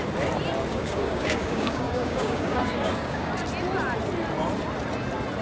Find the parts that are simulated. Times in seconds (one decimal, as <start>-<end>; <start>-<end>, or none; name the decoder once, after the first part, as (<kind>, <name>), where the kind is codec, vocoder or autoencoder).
0.7-3.3 (codec, DAC)